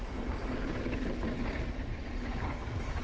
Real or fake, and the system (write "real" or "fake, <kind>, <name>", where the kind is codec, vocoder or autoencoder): real